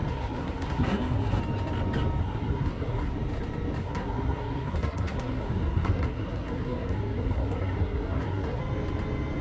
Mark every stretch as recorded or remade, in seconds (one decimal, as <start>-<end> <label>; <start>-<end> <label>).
0.0-1.4 remade; 1.4-2.2 recorded; 2.2-3.1 remade; 3.1-3.8 recorded; 3.8-8.6 remade; 8.6-9.4 recorded